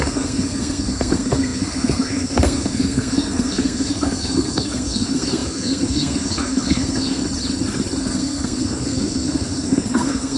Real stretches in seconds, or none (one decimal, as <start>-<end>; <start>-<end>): 7.2-8.0

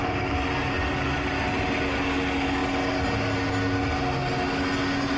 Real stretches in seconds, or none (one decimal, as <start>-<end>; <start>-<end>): 0.0-5.2